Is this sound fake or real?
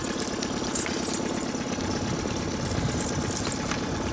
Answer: real